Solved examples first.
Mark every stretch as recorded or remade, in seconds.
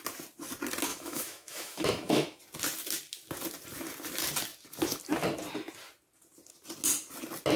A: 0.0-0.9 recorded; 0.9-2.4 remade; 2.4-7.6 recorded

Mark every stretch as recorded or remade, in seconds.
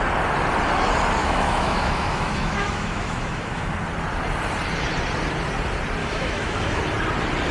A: 0.0-1.2 recorded; 1.2-3.7 remade; 3.7-6.0 recorded; 6.0-6.8 remade; 6.8-7.5 recorded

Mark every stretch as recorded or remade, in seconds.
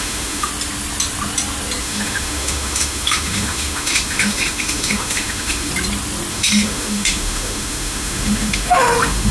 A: 0.0-0.5 remade; 0.5-1.8 recorded; 1.8-5.7 remade; 5.7-6.3 recorded; 6.3-9.3 remade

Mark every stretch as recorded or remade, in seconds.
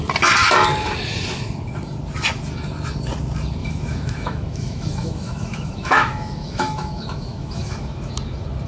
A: 0.0-3.6 recorded; 3.6-8.1 remade; 8.1-8.7 recorded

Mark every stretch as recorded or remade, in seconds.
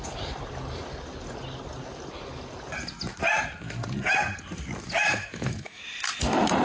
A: 0.0-5.0 recorded; 5.0-5.8 remade; 5.8-6.6 recorded